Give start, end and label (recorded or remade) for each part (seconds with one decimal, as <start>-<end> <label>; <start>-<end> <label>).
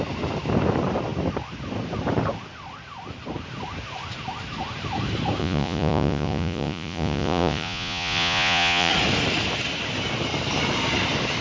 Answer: 0.0-5.4 recorded; 5.4-8.9 remade; 8.9-11.4 recorded